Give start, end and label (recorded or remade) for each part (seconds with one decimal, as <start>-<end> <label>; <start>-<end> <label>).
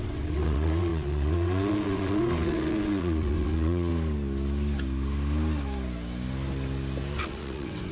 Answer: 0.0-3.9 remade; 3.9-7.2 recorded; 7.2-7.9 remade